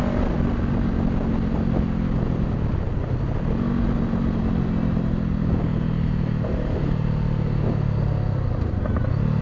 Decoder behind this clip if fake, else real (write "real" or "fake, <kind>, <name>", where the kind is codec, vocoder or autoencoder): real